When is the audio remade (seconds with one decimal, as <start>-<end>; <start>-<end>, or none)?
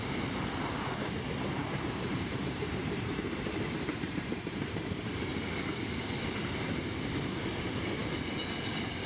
1.6-5.3